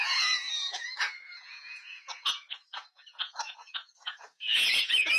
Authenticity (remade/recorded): remade